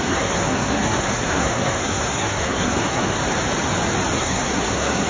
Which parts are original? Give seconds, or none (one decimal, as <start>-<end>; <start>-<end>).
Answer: 3.2-4.2